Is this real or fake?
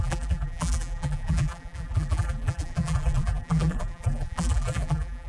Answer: fake